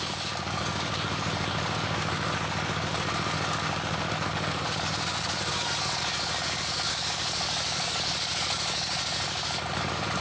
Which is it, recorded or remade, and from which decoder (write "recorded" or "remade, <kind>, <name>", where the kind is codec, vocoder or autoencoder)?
remade, codec, DAC